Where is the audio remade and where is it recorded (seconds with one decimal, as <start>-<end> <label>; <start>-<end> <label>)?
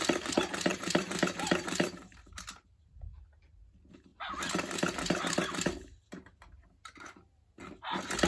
0.0-0.7 recorded; 0.7-3.1 remade; 3.1-8.3 recorded